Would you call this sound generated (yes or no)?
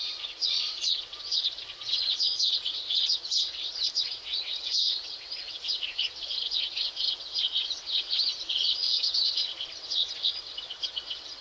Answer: yes